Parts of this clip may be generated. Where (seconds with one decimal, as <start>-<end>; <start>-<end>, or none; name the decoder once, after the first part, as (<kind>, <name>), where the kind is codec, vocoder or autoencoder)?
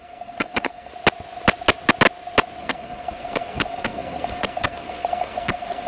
0.0-0.9 (codec, SNAC); 2.6-5.9